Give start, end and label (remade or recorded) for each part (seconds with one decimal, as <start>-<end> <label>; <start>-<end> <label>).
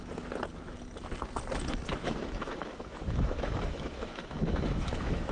0.0-1.9 recorded; 1.9-5.3 remade